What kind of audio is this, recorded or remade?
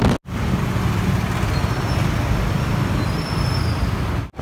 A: recorded